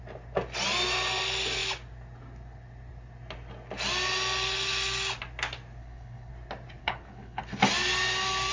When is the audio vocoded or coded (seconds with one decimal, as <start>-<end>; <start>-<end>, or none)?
5.8-6.3; 6.8-7.4